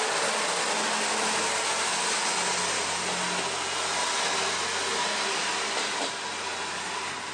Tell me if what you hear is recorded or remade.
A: recorded